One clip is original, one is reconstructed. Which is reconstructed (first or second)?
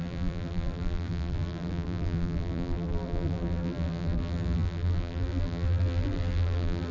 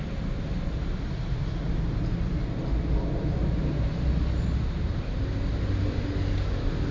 first